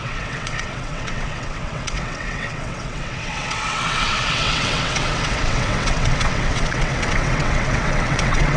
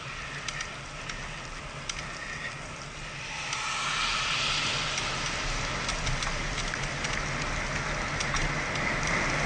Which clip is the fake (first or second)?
first